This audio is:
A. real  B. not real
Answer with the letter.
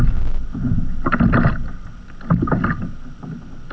A